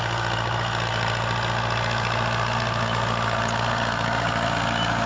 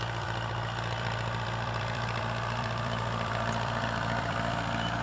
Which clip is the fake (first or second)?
second